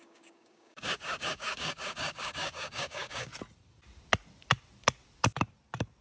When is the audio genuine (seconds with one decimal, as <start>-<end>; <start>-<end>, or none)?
3.3-6.0